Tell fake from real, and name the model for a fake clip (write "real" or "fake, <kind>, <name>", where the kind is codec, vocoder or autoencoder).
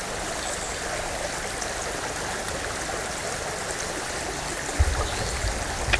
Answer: real